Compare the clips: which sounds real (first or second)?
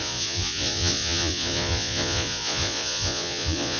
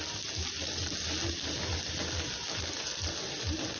second